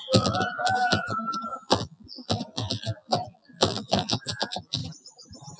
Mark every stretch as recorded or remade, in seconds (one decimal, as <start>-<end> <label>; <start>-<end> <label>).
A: 0.0-4.8 remade; 4.8-5.6 recorded